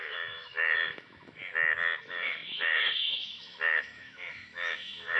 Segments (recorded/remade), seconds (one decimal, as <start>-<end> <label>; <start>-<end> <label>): 0.0-1.4 remade; 1.4-2.0 recorded; 2.0-5.2 remade